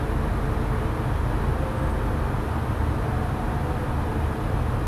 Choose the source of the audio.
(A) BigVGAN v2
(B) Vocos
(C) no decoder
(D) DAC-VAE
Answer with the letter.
C